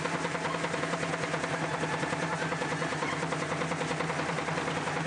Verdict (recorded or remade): recorded